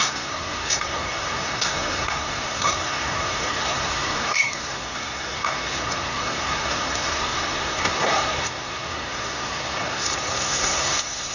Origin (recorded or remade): remade